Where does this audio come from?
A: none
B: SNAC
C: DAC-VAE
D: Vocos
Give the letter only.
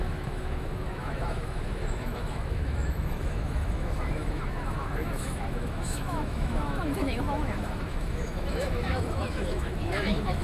C